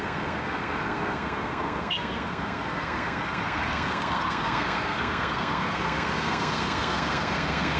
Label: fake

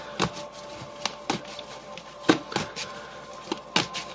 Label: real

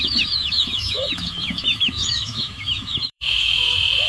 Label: fake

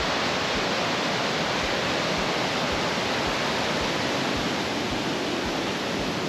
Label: real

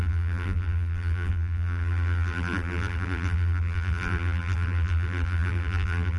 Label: fake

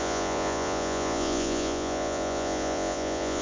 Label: fake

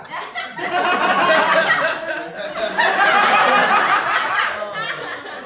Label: real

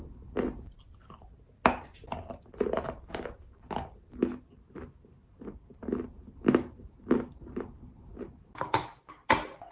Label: real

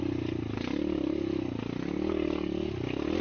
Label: real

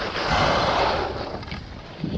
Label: real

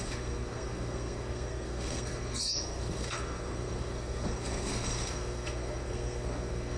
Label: fake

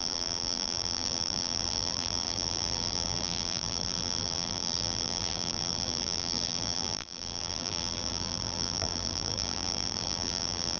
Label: fake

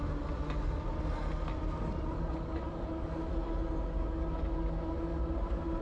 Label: real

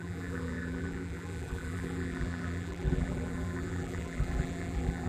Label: fake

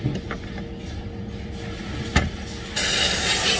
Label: real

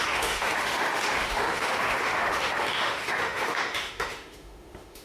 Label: fake